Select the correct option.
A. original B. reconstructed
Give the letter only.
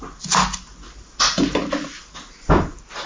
A